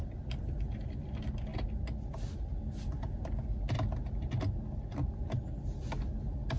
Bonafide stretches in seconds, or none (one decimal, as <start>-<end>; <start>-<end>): 0.0-6.6